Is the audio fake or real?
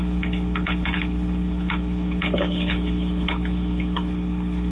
fake